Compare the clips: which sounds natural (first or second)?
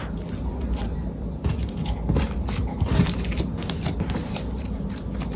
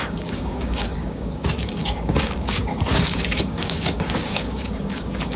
first